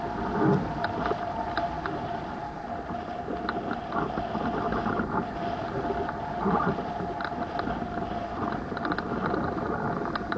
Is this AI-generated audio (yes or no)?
no